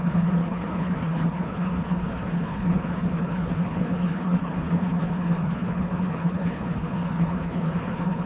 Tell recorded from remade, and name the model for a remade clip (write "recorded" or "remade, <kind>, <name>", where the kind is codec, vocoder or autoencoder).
remade, codec, HILCodec